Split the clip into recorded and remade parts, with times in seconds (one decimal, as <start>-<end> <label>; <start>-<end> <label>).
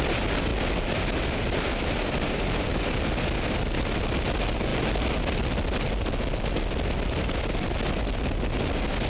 0.0-9.1 recorded